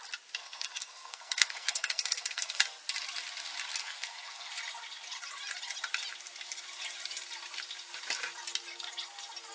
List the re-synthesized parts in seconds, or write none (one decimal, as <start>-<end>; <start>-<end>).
0.4-2.6; 3.8-4.5